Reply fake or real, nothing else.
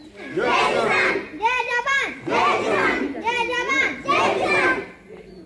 real